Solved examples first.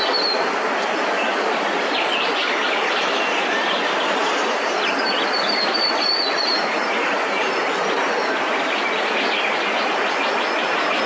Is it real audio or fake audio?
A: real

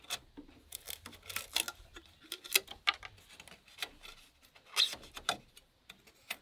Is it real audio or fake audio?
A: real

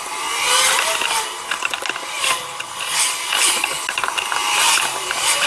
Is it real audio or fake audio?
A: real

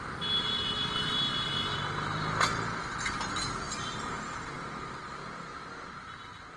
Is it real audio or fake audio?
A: real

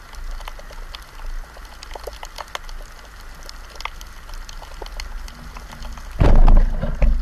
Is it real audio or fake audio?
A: real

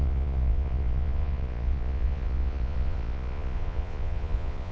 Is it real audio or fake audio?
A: fake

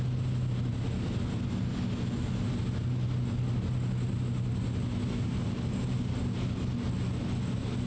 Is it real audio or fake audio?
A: real